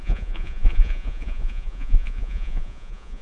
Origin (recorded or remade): remade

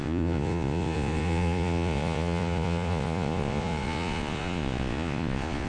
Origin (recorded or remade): remade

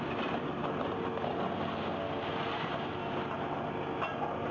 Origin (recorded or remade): recorded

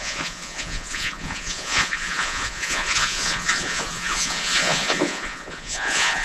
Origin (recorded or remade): remade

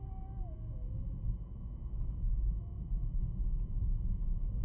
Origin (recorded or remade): recorded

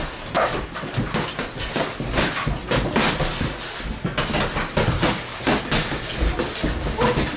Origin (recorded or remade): recorded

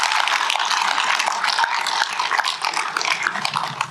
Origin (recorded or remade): recorded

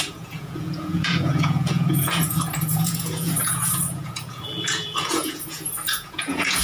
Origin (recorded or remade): remade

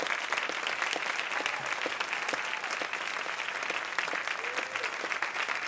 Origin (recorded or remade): recorded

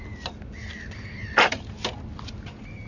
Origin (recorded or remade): recorded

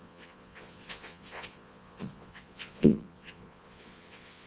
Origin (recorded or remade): remade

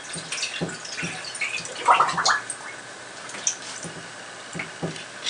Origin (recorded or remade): recorded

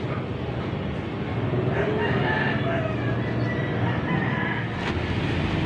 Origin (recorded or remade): recorded